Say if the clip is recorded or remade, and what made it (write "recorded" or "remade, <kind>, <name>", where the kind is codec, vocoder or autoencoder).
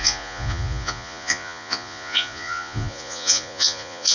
remade, vocoder, Vocos